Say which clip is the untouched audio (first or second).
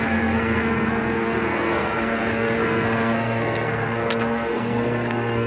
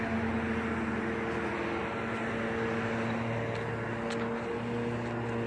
second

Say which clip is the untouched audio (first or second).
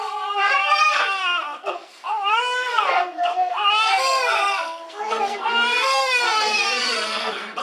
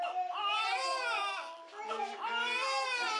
second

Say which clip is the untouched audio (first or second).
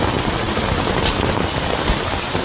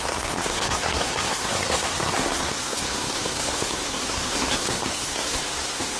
first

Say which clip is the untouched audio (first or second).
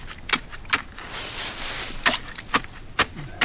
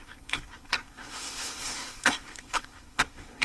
first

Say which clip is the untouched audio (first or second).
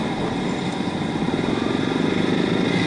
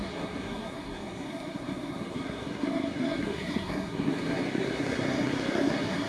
first